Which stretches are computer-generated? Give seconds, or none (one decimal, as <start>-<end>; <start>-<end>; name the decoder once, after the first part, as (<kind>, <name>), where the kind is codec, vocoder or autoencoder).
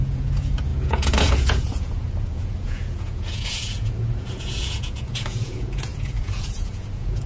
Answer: 0.0-7.3 (vocoder, Vocos)